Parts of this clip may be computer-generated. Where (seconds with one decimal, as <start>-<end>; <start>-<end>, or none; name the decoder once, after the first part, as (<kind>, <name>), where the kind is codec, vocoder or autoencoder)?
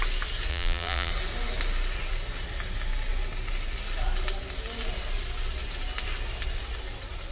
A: 0.5-1.1 (vocoder, BigVGAN v2)